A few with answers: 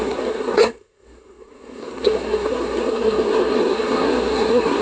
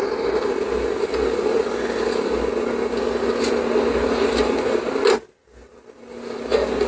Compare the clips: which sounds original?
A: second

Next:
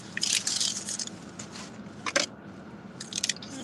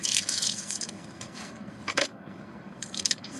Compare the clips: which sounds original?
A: first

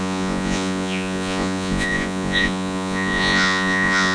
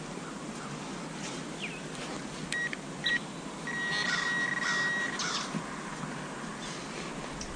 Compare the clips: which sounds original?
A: second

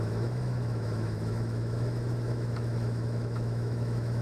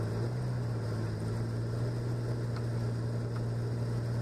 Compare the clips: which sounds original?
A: second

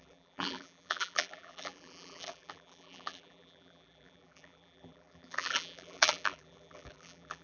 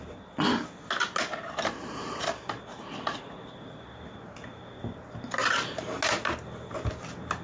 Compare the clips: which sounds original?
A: second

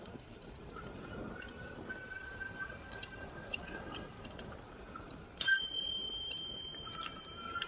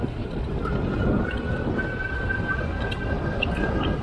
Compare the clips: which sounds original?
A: second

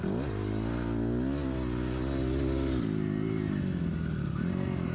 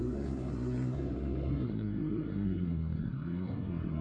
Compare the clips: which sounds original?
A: first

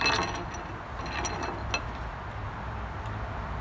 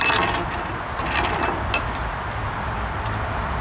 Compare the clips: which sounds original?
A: first